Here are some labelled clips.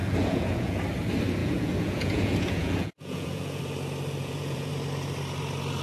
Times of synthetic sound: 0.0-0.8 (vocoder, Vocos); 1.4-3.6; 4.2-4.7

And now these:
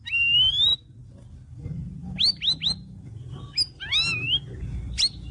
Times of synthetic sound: none

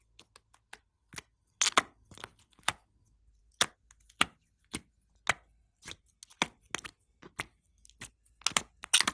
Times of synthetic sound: none